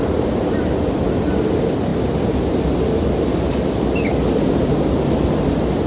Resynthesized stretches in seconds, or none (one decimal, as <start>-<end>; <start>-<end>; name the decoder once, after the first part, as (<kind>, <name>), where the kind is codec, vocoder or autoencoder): none

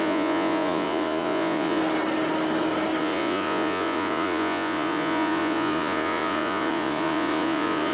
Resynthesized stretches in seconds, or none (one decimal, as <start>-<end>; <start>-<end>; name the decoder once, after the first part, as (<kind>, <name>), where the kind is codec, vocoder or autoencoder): 0.0-1.8 (vocoder, Vocos); 3.0-7.9

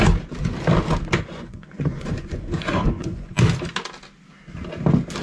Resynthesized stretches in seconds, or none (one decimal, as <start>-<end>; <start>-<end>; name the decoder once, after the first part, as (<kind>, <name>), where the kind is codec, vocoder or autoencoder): 1.3-3.3 (vocoder, Vocos)